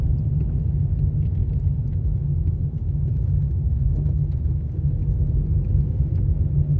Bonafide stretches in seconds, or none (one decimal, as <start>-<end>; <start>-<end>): 0.0-1.4; 5.0-6.8